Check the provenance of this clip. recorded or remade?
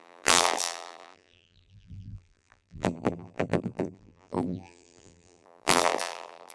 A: remade